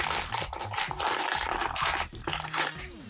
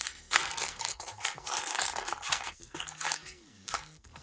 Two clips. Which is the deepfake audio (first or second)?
second